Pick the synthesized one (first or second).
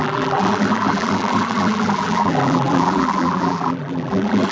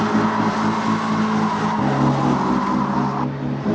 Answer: first